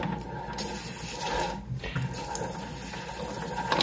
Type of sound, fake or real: real